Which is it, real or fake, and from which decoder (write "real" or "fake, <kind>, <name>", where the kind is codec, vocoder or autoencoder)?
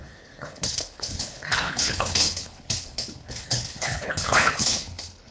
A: fake, codec, HILCodec